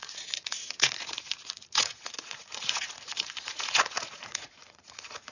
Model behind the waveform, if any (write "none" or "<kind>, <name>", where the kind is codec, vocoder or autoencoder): vocoder, Vocos